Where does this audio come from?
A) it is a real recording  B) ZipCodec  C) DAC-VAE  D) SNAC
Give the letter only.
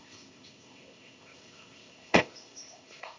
B